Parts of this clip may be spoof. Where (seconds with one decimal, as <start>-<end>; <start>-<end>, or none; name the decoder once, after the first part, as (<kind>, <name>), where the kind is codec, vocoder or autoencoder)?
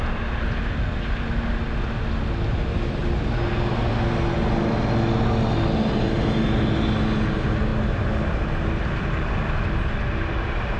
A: none